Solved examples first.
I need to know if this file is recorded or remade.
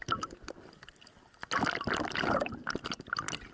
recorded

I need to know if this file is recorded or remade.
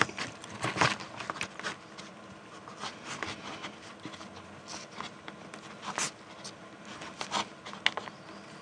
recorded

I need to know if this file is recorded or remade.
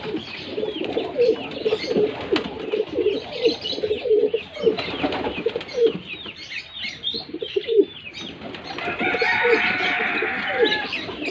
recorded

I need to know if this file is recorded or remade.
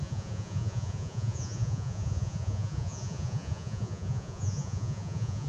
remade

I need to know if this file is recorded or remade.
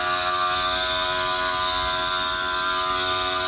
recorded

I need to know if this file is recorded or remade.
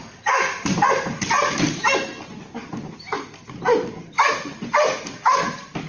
recorded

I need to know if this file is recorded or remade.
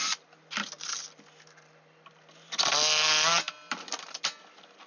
recorded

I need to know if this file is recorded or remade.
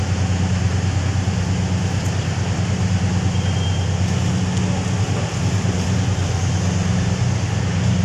recorded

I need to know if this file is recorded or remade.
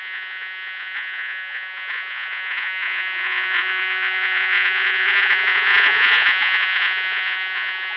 remade